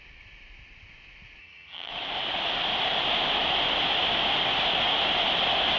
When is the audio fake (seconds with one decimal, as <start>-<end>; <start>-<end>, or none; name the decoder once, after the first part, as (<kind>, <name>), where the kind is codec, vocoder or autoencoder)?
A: 1.4-1.9 (vocoder, HiFi-GAN)